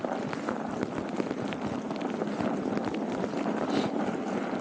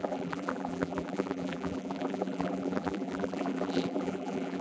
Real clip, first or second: first